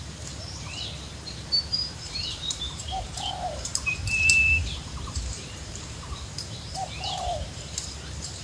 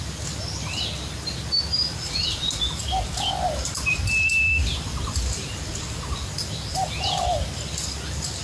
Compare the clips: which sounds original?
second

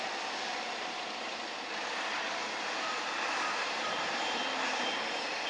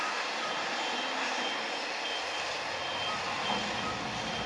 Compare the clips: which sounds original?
second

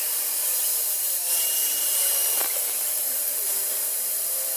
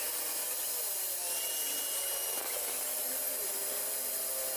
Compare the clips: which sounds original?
second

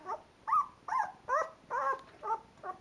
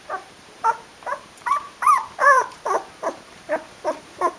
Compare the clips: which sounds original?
first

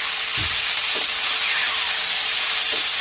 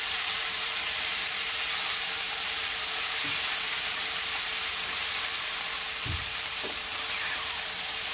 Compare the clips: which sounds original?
first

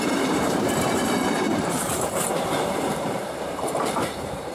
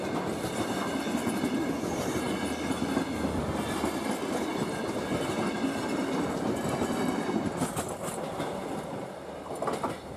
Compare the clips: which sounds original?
second